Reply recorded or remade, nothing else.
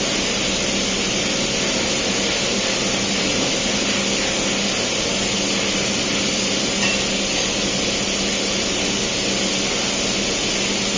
recorded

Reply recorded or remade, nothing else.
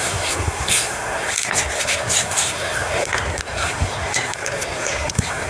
remade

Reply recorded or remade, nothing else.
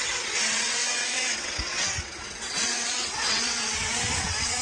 remade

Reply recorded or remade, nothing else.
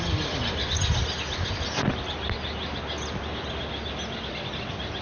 recorded